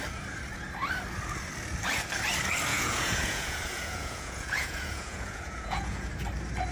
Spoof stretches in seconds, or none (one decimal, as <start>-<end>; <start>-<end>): 2.7-6.1